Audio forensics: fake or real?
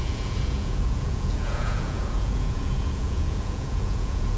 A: fake